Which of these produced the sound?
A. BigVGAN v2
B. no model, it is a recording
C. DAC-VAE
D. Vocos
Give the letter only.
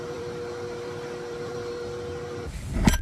A